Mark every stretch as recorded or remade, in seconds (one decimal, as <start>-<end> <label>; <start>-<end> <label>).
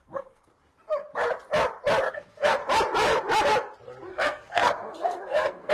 0.0-0.5 remade; 0.5-2.1 recorded; 2.1-2.6 remade; 2.6-4.1 recorded; 4.1-5.7 remade